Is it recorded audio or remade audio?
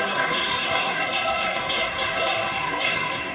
remade